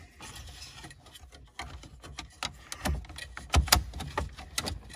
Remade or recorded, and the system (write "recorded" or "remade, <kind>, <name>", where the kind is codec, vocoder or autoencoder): recorded